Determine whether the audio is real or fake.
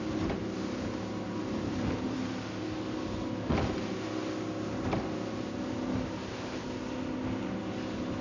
real